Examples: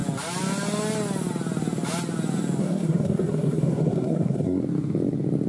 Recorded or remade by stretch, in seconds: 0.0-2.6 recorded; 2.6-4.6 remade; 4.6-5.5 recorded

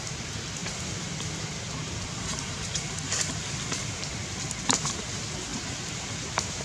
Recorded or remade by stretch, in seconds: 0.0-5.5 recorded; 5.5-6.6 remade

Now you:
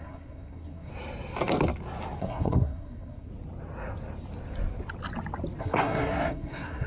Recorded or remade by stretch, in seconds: 0.0-0.9 remade; 0.9-2.2 recorded; 2.2-3.3 remade; 3.3-5.6 recorded; 5.6-6.9 remade

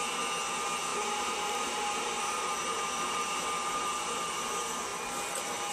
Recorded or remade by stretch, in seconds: 0.0-0.9 recorded; 0.9-4.3 remade; 4.3-5.7 recorded

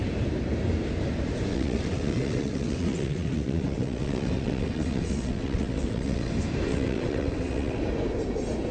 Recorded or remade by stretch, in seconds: 0.0-1.5 recorded; 1.5-6.3 remade; 6.3-6.7 recorded; 6.7-7.8 remade; 7.8-8.7 recorded

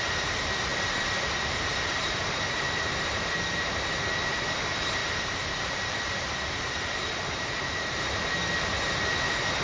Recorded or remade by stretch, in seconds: 0.0-0.7 recorded; 0.7-3.7 remade; 3.7-5.0 recorded; 5.0-8.4 remade; 8.4-9.6 recorded

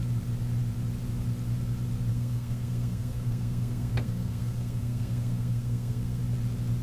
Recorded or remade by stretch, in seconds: 0.0-2.1 recorded; 2.1-6.2 remade; 6.2-6.8 recorded